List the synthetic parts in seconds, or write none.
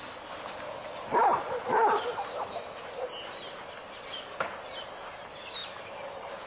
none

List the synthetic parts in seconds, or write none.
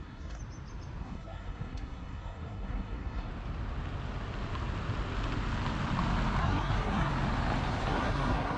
0.0-0.4 (codec, SNAC); 1.0-3.3; 6.4-7.1; 7.9-8.6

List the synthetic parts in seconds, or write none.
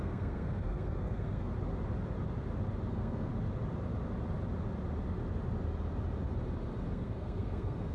0.0-1.5 (codec, SNAC); 2.9-3.3; 6.9-7.9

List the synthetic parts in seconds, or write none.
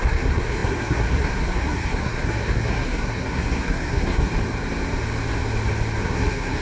0.0-4.3 (codec, SNAC); 6.0-6.6